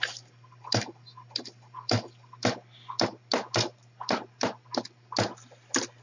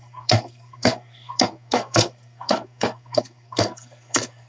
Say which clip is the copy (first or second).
second